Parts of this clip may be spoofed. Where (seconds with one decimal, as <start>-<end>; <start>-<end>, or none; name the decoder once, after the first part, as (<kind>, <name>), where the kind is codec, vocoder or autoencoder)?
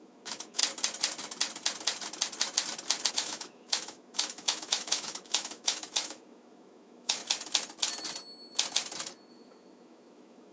0.0-0.6 (autoencoder, DAC-VAE); 3.1-7.2; 9.3-10.5